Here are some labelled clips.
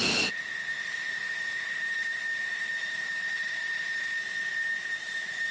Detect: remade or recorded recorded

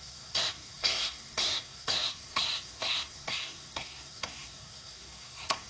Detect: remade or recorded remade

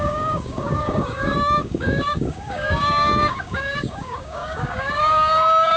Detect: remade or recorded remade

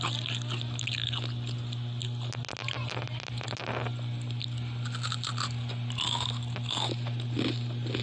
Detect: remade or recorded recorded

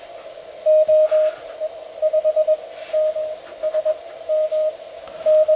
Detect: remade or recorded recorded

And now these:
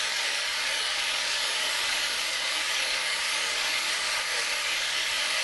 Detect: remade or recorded remade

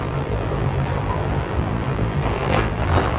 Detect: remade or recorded remade